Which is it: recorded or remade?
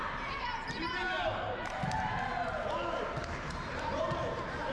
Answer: remade